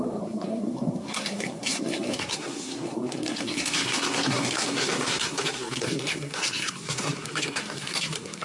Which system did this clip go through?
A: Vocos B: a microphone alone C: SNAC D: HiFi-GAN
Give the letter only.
C